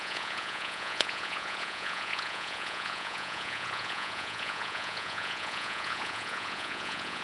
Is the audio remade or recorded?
remade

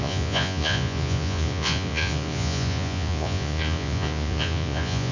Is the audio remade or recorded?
remade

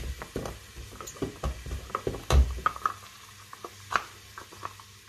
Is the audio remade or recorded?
recorded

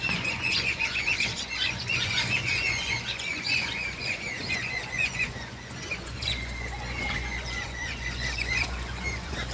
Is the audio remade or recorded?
remade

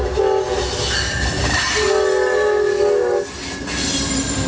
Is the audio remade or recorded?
recorded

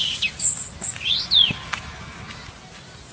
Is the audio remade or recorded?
recorded